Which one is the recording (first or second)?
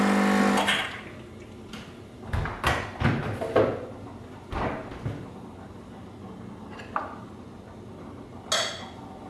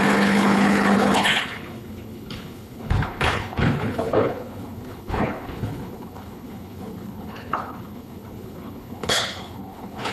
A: first